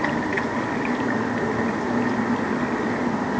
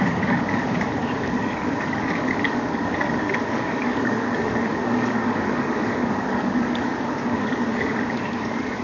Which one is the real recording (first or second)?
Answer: first